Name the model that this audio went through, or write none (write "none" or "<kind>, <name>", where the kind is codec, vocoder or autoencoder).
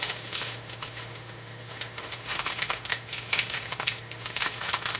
autoencoder, DAC-VAE